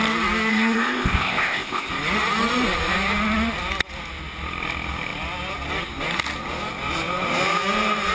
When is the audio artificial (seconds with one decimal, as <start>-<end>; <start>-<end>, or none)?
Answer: 0.5-1.9